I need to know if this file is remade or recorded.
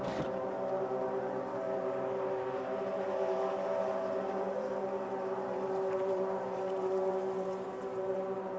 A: remade